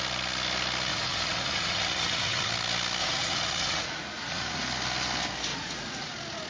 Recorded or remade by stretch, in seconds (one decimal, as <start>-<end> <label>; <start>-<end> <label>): 0.0-0.9 recorded; 0.9-2.5 remade; 2.5-3.0 recorded; 3.0-4.6 remade; 4.6-5.5 recorded; 5.5-6.1 remade; 6.1-6.5 recorded